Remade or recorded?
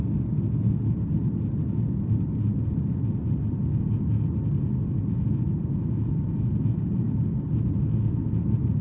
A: recorded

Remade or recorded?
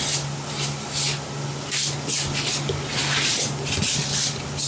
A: recorded